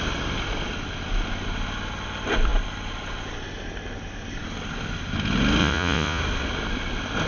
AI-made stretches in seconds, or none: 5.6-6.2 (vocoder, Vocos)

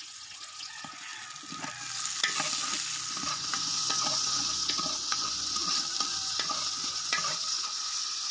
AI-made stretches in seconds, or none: 0.0-1.1 (vocoder, Vocos); 3.3-5.6; 6.1-8.3

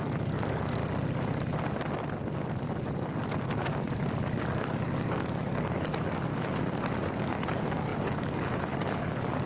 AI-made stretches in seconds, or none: 0.0-0.8 (codec, DAC); 4.4-6.3; 7.2-9.5

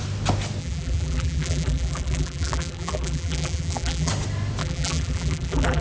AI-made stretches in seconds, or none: 0.6-4.1 (vocoder, BigVGAN v2); 4.6-5.8

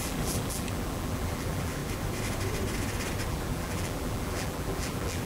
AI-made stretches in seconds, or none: 0.0-1.8 (vocoder, BigVGAN v2); 3.3-5.3

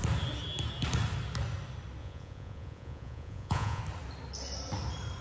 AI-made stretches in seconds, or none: 2.0-3.8 (vocoder, Vocos)

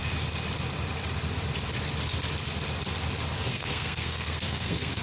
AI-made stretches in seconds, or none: 3.5-5.0 (codec, SNAC)

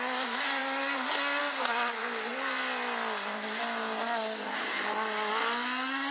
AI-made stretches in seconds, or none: none